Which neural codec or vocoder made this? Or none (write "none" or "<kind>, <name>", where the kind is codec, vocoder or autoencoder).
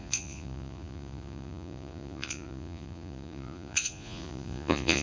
vocoder, Vocos